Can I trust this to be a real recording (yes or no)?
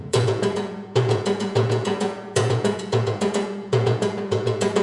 no